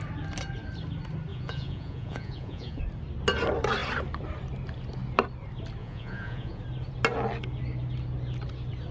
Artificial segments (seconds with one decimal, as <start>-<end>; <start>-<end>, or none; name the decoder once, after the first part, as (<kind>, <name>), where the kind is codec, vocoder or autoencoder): 1.3-2.8 (vocoder, Vocos); 5.8-6.6